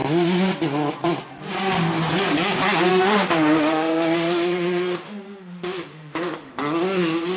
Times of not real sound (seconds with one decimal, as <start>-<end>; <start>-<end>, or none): 2.9-6.6